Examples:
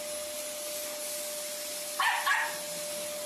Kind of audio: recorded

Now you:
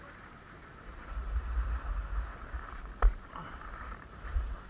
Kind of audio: remade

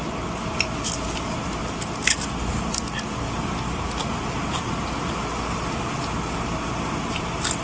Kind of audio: recorded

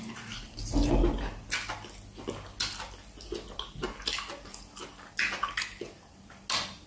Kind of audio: recorded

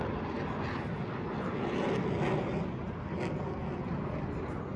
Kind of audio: recorded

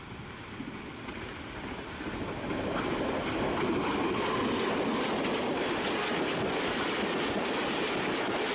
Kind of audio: recorded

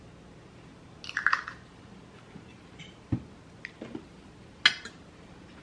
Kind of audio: recorded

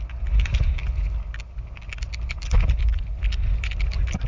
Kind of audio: recorded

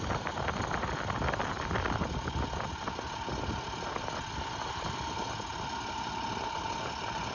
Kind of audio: recorded